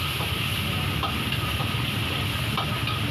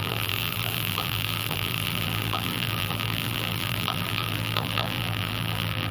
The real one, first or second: first